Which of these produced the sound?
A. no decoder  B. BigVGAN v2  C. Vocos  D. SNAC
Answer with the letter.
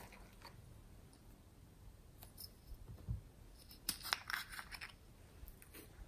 A